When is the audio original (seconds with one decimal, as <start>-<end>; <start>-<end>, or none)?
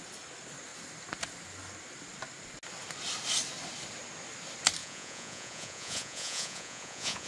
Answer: 0.0-4.8